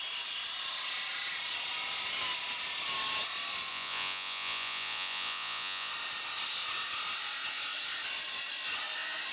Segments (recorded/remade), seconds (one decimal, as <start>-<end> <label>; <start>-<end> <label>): 0.0-3.7 recorded; 3.7-5.9 remade; 5.9-9.3 recorded